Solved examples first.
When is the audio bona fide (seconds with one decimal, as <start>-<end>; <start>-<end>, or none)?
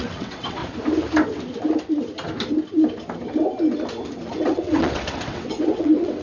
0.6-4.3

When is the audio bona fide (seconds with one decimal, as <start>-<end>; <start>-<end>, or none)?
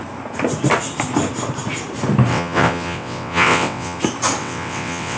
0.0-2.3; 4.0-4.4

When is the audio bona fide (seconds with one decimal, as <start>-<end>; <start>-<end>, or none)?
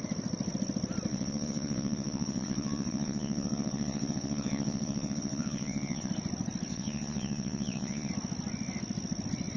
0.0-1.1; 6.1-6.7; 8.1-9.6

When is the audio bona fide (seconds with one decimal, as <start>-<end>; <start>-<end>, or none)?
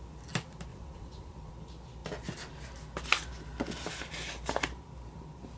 0.0-0.7; 1.5-5.6